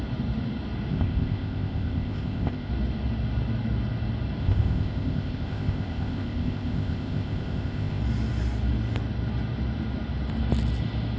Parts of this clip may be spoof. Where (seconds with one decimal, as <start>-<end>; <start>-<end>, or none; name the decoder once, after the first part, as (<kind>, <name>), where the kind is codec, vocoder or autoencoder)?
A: 0.9-2.7 (codec, ZipCodec); 4.4-8.0